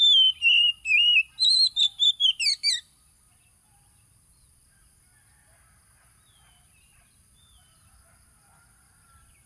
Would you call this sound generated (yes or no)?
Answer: no